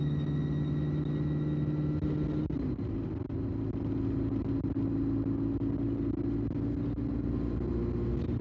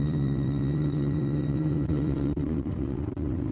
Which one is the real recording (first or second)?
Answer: first